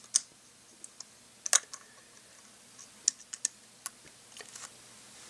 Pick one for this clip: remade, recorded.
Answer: recorded